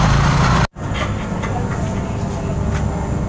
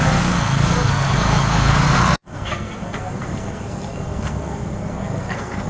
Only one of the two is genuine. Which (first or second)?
first